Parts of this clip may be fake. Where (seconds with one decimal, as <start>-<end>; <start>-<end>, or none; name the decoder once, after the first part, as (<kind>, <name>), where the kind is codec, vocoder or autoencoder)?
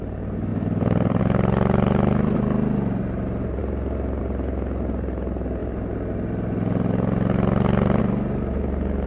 0.5-1.2 (vocoder, BigVGAN v2)